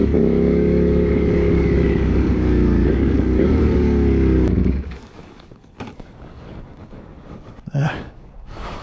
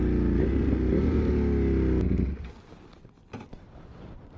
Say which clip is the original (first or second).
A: second